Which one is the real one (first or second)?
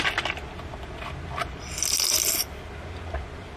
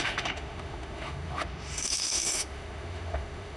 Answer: first